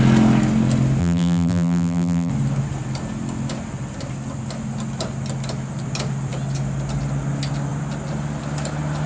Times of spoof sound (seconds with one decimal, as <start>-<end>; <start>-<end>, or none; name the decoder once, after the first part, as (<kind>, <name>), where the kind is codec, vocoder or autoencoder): 1.0-2.3 (vocoder, BigVGAN v2)